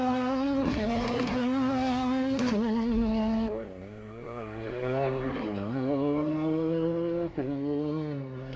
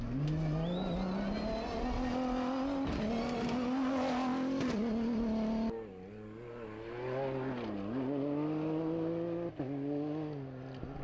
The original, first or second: second